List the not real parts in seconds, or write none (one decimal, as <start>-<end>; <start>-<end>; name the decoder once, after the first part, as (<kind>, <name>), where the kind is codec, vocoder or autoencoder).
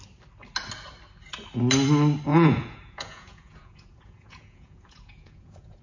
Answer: 2.3-5.8 (vocoder, Vocos)